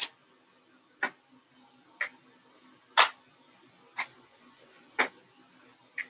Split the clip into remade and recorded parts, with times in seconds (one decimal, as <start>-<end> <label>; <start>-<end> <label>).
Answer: 0.0-4.1 recorded; 4.1-5.0 remade; 5.0-6.1 recorded